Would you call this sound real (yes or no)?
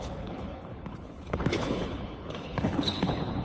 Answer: no